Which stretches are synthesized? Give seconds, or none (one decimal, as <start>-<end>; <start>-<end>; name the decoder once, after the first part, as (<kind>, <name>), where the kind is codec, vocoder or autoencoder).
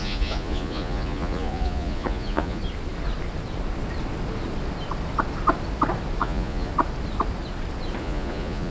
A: 0.0-2.6 (vocoder, Vocos); 6.2-6.7; 8.0-8.7